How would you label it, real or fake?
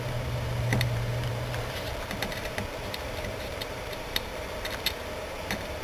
fake